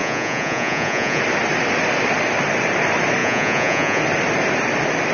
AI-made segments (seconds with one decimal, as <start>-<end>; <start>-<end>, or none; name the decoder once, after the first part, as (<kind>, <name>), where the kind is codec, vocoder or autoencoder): 0.0-1.2 (vocoder, Vocos); 3.2-4.0